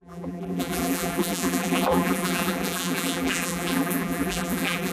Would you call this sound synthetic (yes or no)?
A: yes